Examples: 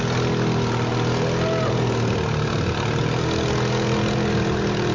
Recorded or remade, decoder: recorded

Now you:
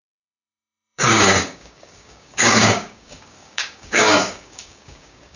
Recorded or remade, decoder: remade, codec, DAC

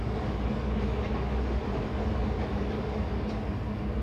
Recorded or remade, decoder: remade, codec, DAC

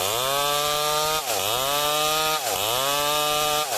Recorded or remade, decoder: recorded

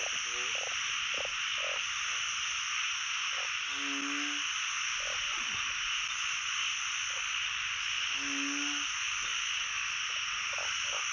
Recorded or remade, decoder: recorded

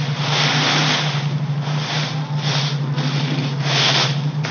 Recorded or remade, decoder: recorded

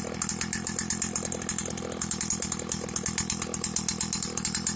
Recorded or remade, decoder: recorded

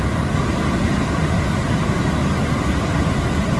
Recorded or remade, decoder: recorded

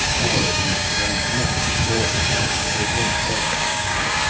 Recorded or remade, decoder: remade, codec, DAC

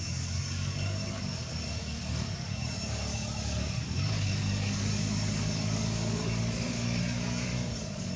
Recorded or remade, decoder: remade, codec, DAC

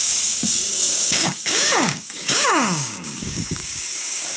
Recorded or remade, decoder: remade, codec, DAC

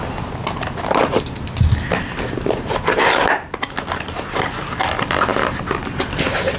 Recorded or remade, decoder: recorded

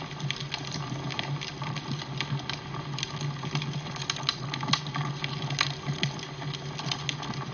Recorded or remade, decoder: recorded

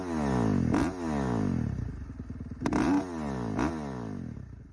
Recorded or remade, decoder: recorded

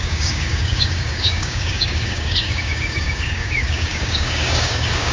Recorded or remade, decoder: remade, codec, DAC